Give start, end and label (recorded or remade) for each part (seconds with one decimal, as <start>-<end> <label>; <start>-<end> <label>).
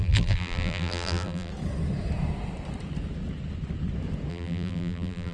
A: 0.0-1.5 remade; 1.5-4.3 recorded; 4.3-5.3 remade